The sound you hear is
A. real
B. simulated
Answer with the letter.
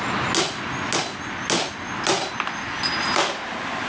A